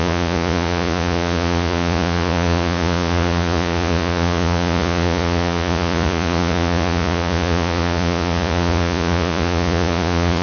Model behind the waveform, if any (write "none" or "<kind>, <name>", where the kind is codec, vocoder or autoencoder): vocoder, Vocos